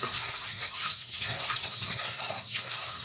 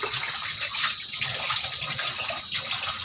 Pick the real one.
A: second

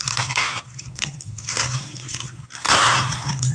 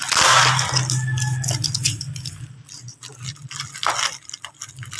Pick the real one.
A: second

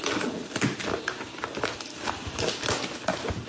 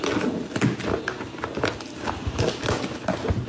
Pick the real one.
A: second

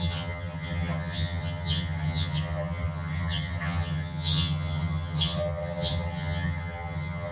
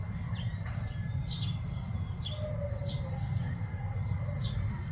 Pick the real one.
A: second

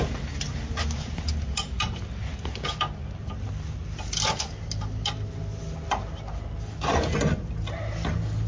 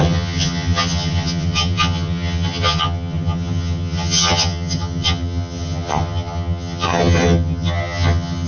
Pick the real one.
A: first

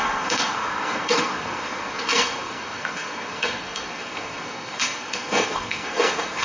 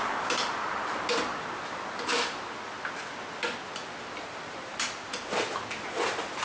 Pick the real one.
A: second